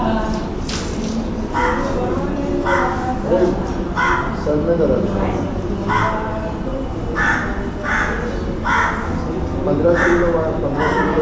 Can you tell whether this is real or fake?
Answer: real